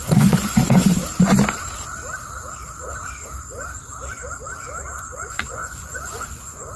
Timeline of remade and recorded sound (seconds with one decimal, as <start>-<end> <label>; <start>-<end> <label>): 0.0-0.9 remade; 0.9-5.0 recorded; 5.0-6.8 remade